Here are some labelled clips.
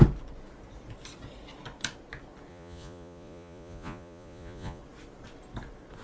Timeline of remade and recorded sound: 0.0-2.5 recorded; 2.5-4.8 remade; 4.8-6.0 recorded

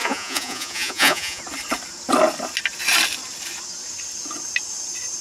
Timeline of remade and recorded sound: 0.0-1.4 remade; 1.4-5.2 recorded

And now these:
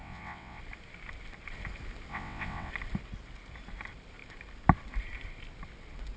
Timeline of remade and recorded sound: 0.0-0.6 remade; 0.6-2.1 recorded; 2.1-2.7 remade; 2.7-6.2 recorded